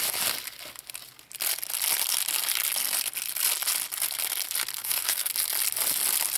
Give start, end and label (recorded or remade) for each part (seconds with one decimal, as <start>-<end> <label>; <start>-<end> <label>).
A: 0.0-4.8 recorded; 4.8-5.3 remade; 5.3-6.4 recorded